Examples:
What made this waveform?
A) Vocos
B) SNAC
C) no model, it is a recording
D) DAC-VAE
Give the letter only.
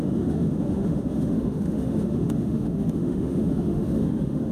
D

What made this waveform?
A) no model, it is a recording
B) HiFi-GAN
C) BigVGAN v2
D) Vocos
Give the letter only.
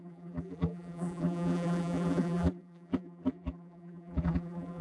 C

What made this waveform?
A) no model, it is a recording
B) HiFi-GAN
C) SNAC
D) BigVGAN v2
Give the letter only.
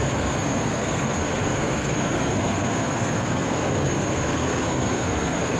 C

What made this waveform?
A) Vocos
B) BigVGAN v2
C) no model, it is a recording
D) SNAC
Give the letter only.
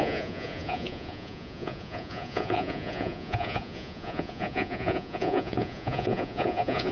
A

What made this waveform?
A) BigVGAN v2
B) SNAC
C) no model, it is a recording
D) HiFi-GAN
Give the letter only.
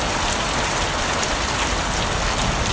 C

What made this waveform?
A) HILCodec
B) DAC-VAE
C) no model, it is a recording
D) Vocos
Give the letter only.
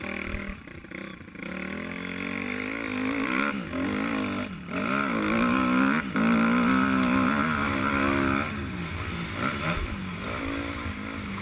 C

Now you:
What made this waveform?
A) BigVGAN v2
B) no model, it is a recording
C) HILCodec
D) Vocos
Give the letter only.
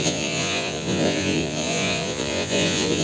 D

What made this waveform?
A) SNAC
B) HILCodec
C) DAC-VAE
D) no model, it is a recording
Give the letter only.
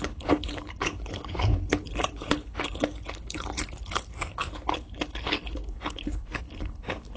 B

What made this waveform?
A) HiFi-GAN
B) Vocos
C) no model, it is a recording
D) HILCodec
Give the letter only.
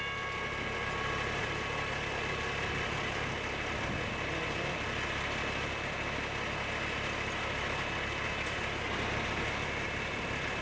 C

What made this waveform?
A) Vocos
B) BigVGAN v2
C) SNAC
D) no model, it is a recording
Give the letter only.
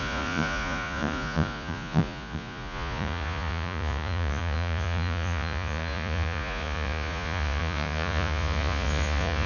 A